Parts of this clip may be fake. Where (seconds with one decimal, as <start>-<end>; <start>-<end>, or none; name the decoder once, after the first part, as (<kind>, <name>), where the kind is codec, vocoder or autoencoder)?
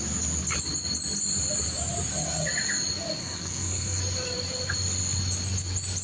3.2-4.0 (codec, SNAC)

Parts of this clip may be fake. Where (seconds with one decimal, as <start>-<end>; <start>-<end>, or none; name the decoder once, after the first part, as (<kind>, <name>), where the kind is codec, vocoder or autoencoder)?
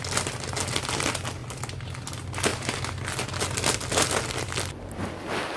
none